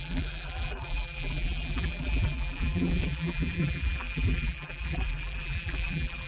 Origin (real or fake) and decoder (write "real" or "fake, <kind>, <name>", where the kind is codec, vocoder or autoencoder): fake, vocoder, BigVGAN v2